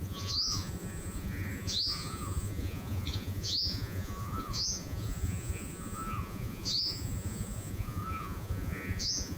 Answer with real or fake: fake